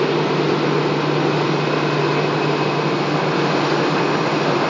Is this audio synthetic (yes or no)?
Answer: no